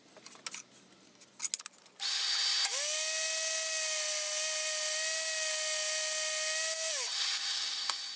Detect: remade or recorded recorded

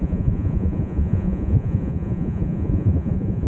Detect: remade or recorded remade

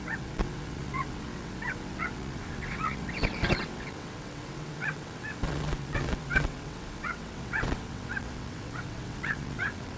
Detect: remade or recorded remade